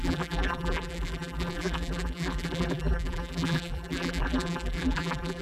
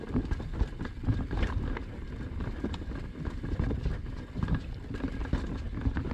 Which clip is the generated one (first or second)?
first